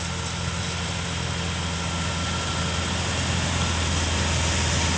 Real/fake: real